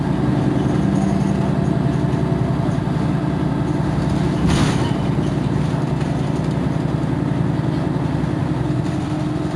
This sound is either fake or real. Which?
real